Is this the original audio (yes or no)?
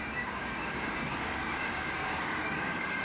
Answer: no